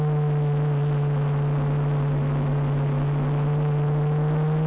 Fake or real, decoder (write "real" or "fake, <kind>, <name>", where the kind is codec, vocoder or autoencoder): real